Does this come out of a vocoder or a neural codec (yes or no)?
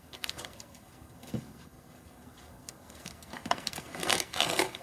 yes